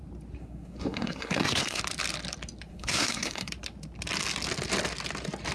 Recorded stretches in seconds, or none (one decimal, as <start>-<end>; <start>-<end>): 0.0-0.4; 1.8-2.7; 3.5-5.5